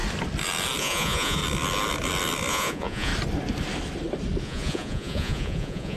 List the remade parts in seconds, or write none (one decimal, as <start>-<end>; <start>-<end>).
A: 0.8-1.4; 2.5-3.1; 4.4-6.0